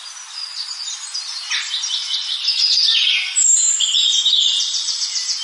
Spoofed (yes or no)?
no